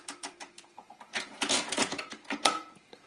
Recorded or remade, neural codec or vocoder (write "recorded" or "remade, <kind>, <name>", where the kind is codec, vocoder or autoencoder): remade, vocoder, Vocos